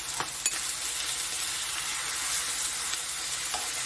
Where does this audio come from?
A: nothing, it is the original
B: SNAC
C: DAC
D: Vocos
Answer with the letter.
A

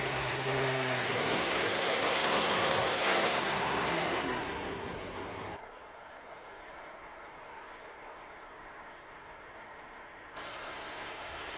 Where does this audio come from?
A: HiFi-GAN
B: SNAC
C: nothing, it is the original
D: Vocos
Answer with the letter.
B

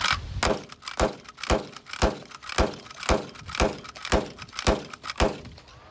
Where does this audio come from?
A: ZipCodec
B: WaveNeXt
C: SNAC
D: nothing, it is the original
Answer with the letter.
D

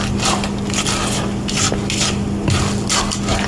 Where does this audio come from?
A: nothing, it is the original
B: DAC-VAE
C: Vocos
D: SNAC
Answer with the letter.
A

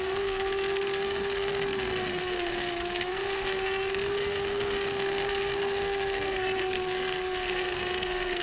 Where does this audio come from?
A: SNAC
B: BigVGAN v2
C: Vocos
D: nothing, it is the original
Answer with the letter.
A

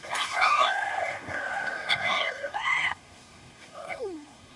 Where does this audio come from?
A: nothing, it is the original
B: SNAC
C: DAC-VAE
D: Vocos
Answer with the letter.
B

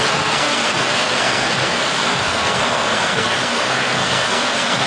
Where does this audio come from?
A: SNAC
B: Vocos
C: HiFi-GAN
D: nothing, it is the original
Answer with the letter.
A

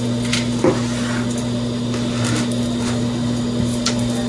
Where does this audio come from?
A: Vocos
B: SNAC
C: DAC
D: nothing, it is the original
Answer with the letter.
D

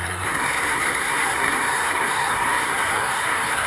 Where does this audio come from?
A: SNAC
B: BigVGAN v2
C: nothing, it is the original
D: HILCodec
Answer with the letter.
A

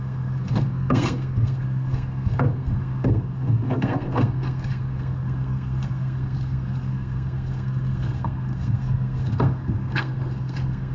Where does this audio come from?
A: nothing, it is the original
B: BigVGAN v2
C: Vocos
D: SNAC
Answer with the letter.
D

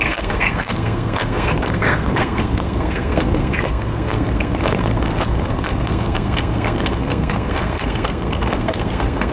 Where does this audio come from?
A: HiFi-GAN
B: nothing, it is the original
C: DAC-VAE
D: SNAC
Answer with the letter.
D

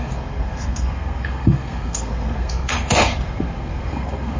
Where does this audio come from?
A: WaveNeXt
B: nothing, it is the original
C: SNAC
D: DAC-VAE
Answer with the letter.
C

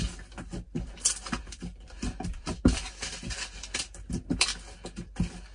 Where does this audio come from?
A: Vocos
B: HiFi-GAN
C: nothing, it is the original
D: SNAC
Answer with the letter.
C